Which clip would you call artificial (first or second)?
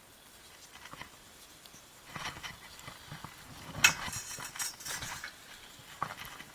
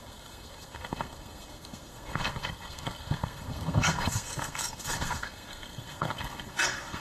second